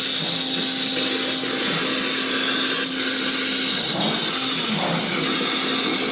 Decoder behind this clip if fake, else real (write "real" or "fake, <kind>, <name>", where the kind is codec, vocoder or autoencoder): real